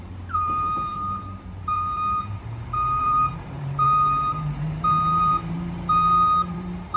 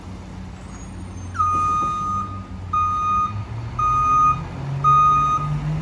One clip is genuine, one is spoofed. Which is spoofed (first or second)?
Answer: first